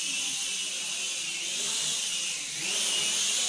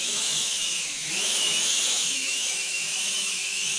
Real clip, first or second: first